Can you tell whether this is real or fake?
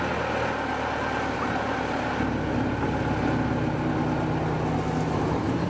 real